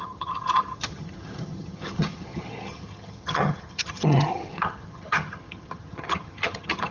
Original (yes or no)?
no